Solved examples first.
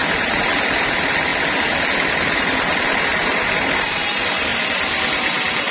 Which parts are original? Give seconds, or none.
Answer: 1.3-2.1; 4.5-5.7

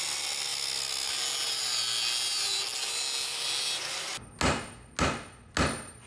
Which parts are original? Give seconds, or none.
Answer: 0.0-6.1

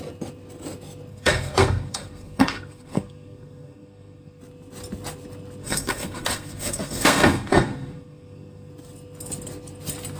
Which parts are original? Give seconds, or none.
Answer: 0.0-1.1; 4.4-5.6; 8.7-10.2

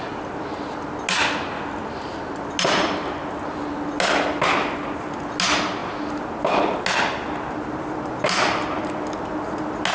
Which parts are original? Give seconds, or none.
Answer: 0.0-9.9

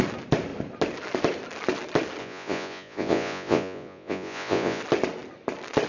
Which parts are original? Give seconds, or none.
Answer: 0.0-2.2; 4.8-5.9

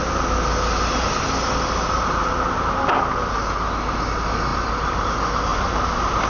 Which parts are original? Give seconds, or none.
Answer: 0.0-2.2; 2.9-4.5; 5.1-5.5

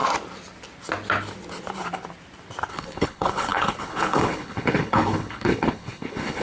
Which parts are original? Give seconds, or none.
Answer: 0.0-2.7

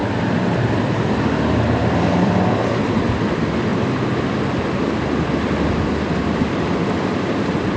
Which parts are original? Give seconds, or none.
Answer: 1.0-1.8; 2.8-7.8